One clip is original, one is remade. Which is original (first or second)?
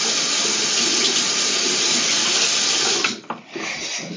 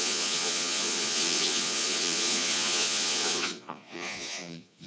first